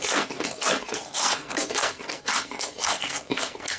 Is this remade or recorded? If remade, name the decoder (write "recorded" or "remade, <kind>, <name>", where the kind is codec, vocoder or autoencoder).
remade, codec, SNAC